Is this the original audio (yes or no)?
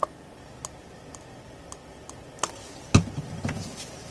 yes